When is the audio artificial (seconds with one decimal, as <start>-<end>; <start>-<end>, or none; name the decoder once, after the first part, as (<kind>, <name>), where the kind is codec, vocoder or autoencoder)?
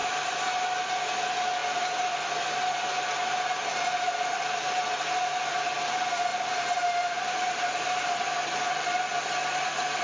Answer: 6.3-8.2 (vocoder, BigVGAN v2)